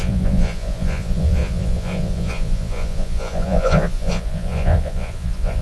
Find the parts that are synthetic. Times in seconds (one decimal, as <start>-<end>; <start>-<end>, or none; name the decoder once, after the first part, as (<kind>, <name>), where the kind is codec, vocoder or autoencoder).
0.0-5.6 (vocoder, Vocos)